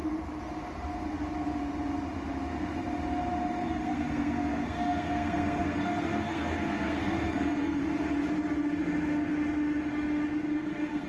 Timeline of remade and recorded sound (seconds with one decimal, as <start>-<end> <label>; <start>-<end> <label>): 0.0-3.7 recorded; 3.7-7.8 remade; 7.8-10.6 recorded; 10.6-11.1 remade